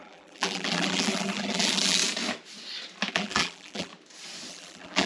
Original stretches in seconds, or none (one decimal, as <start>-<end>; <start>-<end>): 2.0-3.1; 3.9-4.5